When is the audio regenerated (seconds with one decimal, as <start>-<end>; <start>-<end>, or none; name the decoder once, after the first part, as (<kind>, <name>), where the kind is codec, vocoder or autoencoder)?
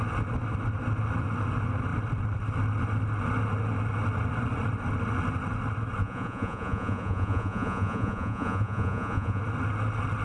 6.0-9.4 (vocoder, Vocos)